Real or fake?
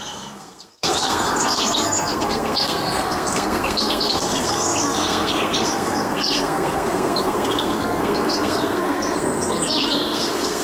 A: fake